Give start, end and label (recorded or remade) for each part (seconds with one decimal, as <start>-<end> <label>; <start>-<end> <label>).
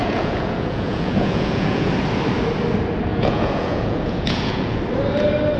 0.0-1.9 remade; 1.9-3.1 recorded; 3.1-4.8 remade; 4.8-5.6 recorded